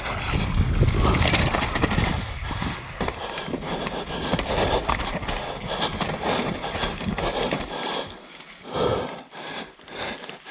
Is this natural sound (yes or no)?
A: yes